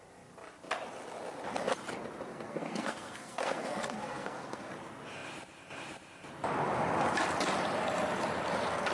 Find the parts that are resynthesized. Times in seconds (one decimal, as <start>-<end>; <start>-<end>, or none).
2.3-4.7